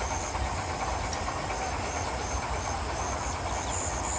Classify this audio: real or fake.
real